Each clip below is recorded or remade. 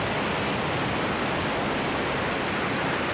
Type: recorded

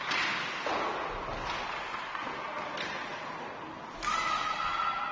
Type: recorded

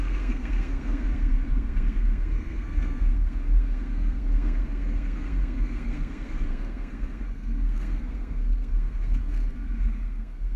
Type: remade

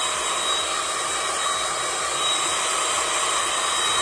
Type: recorded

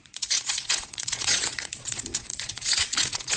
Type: remade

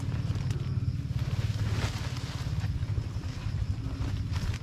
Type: recorded